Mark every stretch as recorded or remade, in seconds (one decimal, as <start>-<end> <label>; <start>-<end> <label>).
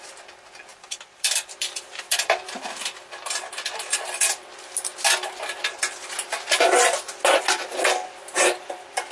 0.0-0.7 recorded; 0.7-3.1 remade; 3.1-9.1 recorded